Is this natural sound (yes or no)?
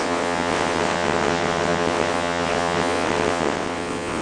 no